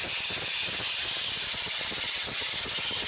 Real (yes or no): yes